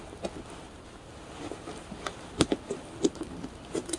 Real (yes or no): yes